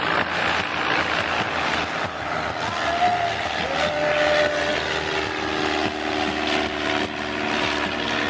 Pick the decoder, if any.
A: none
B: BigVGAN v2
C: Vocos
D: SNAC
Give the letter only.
A